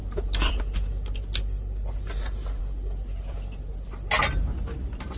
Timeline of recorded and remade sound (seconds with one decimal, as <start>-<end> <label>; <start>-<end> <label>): 0.0-5.2 recorded